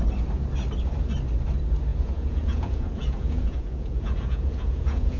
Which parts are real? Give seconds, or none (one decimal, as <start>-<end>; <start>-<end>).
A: 0.0-1.9